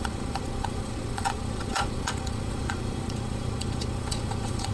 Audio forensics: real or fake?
fake